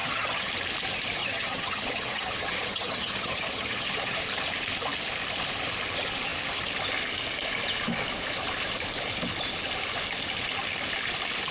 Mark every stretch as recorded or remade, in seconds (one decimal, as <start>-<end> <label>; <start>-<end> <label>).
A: 0.0-0.5 remade; 0.5-1.2 recorded; 1.2-4.2 remade; 4.2-11.5 recorded